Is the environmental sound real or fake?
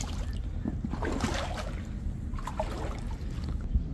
real